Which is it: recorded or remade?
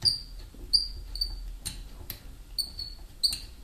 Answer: recorded